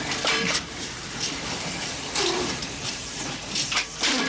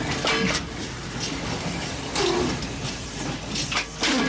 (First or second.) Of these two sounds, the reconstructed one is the first